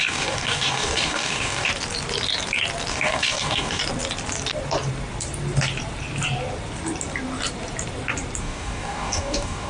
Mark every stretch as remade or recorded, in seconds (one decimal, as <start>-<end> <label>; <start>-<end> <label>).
0.0-1.7 remade; 1.7-2.9 recorded; 2.9-3.8 remade; 3.8-8.4 recorded; 8.4-9.7 remade